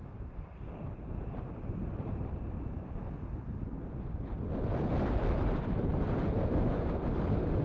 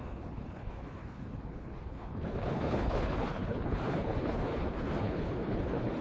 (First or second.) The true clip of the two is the first